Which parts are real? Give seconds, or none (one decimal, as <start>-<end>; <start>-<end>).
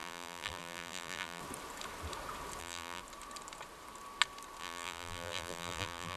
1.4-2.6; 3.0-4.6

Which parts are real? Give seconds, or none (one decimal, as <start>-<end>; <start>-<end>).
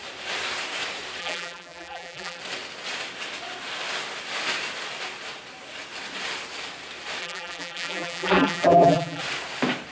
0.0-1.2; 2.4-7.2; 9.2-9.9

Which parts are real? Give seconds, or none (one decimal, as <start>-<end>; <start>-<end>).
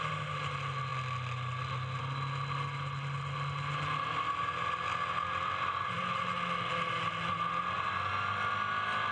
0.0-9.1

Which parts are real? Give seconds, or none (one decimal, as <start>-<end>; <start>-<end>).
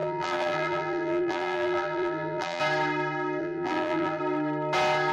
2.6-3.4; 4.2-5.1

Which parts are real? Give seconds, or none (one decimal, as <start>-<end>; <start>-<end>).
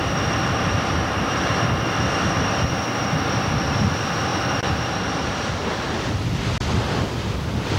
0.0-4.3; 5.5-7.8